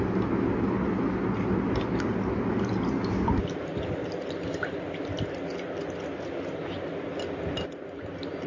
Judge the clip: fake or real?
real